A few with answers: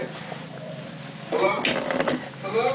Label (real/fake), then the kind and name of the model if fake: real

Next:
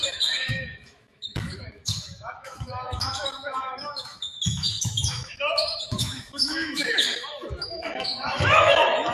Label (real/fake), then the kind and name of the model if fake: fake, autoencoder, DAC-VAE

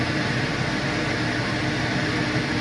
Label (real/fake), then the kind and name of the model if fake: real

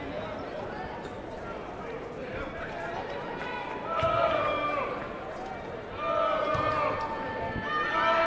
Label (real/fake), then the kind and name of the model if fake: real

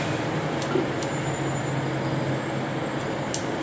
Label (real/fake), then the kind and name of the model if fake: real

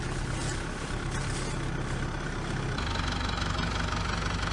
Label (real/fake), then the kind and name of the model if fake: real